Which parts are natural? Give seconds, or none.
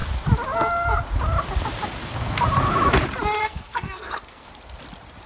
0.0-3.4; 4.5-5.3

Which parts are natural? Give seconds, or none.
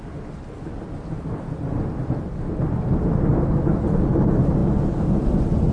0.0-5.7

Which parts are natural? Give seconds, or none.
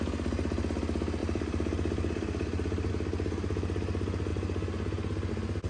0.0-1.2; 2.9-5.7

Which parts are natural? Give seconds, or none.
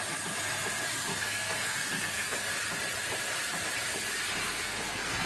0.0-1.1; 2.5-4.4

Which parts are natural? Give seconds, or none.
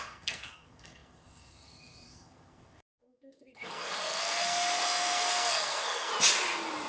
6.1-6.9